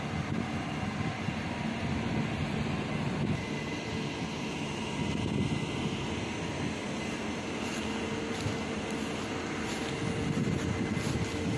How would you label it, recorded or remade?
recorded